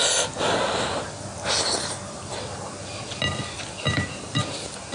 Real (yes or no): yes